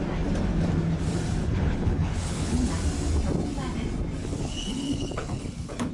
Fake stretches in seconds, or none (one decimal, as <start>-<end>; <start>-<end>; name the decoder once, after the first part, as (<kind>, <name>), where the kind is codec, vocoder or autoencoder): 1.4-2.7 (codec, HILCodec); 4.2-5.9